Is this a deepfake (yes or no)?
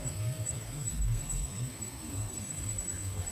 yes